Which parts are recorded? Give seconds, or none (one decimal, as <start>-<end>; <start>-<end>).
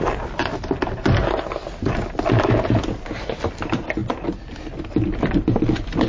0.0-6.1